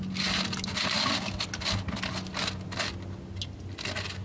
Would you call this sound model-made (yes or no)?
no